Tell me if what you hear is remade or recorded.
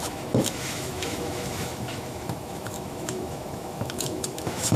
remade